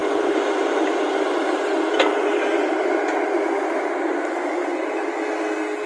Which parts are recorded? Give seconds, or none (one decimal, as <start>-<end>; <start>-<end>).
3.4-4.7; 5.2-5.9